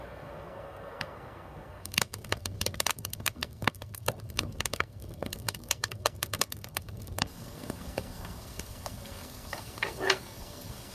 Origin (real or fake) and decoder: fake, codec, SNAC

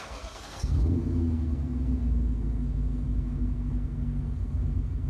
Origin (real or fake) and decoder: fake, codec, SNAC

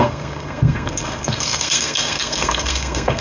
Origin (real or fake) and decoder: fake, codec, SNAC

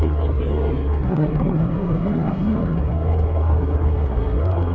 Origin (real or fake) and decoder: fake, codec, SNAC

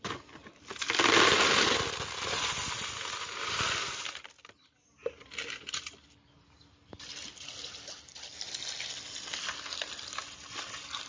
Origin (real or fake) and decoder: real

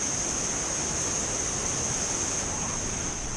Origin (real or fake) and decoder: real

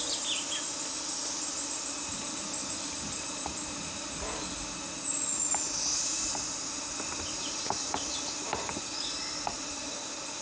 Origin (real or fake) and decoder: real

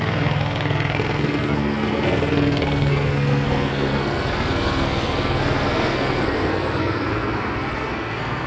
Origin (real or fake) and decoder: fake, codec, SNAC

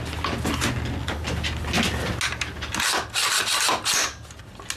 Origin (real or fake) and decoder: real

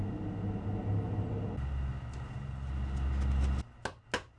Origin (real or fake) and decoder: real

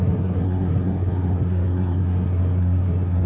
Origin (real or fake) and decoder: fake, codec, SNAC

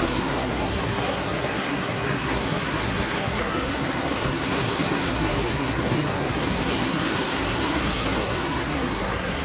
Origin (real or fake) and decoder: fake, codec, SNAC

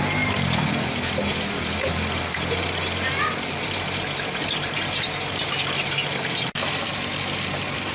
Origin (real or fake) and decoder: real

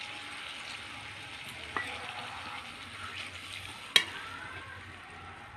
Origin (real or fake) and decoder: real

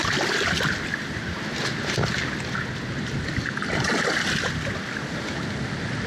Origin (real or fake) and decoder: real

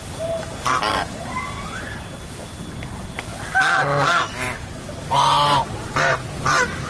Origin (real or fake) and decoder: real